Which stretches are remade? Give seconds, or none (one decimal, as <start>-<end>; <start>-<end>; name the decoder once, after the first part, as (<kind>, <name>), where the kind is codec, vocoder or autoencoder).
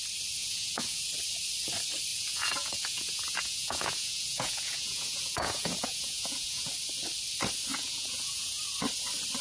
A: 0.4-1.0 (vocoder, Vocos); 2.1-6.7; 7.7-8.6